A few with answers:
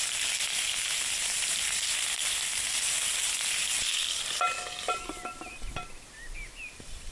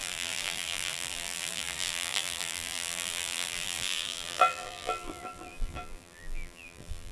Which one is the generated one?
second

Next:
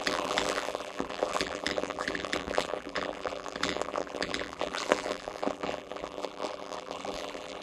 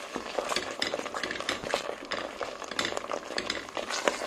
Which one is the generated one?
first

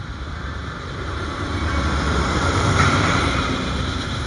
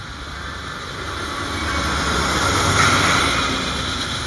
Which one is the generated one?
first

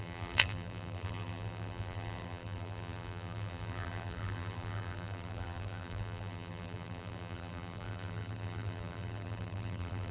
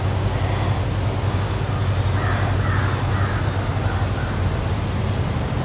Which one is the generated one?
first